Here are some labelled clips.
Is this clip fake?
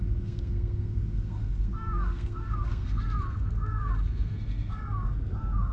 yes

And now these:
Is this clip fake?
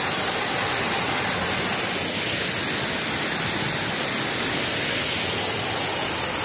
no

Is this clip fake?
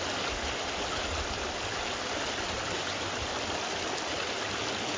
no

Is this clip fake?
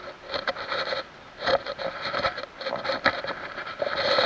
no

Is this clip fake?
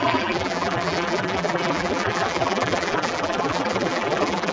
yes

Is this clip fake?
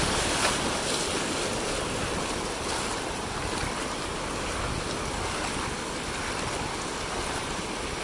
no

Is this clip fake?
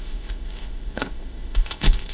yes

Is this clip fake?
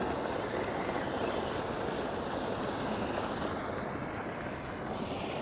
no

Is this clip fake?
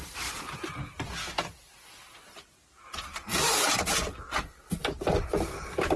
no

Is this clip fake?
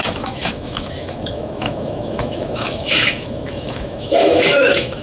yes